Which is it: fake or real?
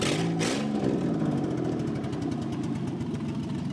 real